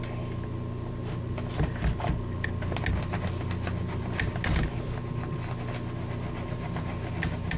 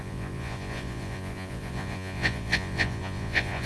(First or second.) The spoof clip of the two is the second